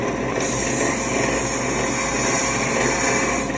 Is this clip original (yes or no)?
yes